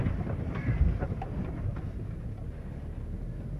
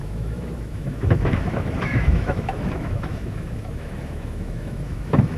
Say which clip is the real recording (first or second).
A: first